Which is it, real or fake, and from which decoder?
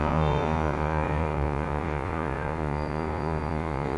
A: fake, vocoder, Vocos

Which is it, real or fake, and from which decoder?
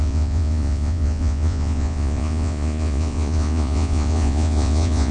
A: fake, vocoder, Vocos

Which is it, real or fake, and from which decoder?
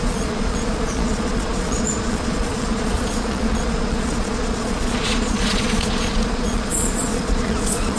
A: fake, vocoder, Vocos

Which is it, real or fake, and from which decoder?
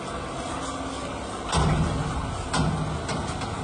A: real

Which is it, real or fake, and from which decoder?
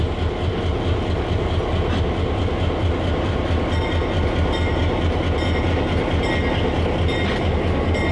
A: real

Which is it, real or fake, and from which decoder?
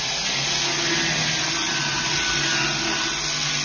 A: real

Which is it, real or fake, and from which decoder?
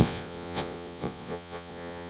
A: fake, vocoder, Vocos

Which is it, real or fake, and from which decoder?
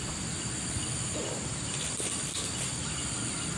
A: real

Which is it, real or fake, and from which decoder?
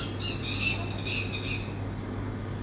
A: real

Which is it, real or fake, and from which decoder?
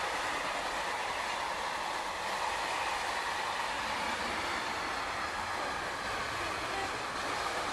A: real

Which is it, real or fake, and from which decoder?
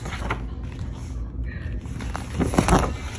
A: real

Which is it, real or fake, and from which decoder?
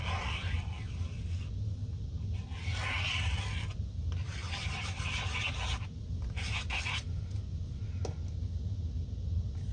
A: real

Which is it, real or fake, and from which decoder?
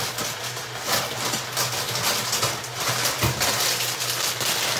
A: real